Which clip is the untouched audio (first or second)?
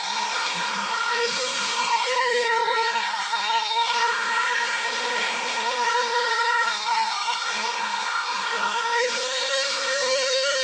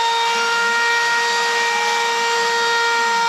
second